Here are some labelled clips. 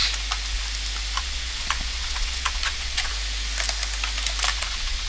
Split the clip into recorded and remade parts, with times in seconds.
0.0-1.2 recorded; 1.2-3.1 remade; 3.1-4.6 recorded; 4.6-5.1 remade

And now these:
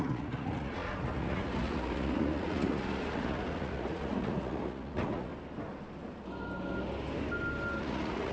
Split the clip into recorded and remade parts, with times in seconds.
0.0-5.3 remade; 5.3-7.8 recorded; 7.8-8.3 remade